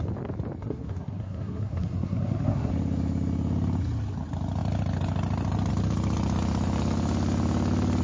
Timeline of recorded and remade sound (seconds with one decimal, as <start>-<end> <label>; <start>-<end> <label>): 0.0-0.6 recorded; 0.6-2.7 remade; 2.7-8.0 recorded